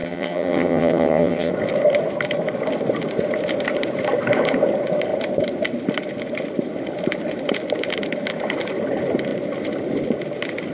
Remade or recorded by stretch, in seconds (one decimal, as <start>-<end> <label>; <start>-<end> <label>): 0.0-1.5 remade; 1.5-10.7 recorded